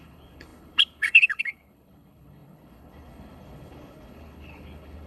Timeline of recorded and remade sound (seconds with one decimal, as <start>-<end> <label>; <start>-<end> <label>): 0.0-5.1 remade